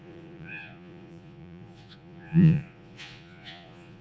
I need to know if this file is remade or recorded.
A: remade